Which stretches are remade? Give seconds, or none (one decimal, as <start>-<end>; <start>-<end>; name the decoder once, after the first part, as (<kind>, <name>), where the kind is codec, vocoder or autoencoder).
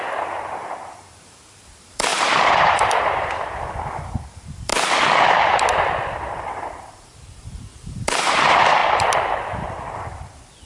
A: 0.0-4.7 (vocoder, BigVGAN v2); 6.1-8.8; 9.4-10.7